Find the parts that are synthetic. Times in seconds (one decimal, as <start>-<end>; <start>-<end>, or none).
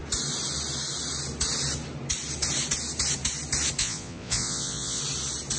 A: 3.8-5.0